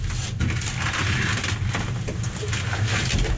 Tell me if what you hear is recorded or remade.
recorded